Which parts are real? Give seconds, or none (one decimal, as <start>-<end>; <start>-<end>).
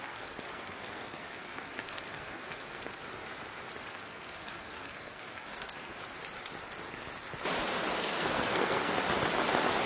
3.0-3.9; 6.0-8.0; 9.0-9.9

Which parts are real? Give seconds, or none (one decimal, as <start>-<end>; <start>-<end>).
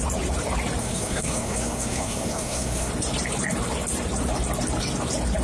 0.0-0.8; 2.9-5.4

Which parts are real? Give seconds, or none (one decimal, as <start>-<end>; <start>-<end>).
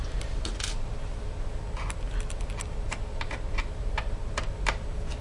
0.0-5.2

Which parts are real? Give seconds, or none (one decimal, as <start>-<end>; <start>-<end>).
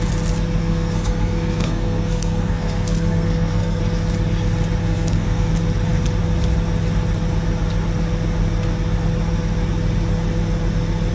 0.0-0.6; 3.8-4.8; 5.5-11.1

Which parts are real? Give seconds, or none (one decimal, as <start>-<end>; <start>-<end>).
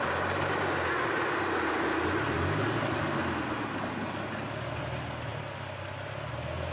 0.0-6.7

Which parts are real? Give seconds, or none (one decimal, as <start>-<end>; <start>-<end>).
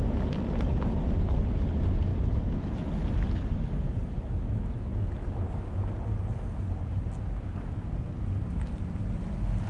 0.0-9.7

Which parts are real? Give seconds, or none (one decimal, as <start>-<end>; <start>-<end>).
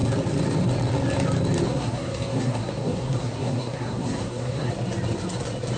0.0-1.7; 4.7-5.8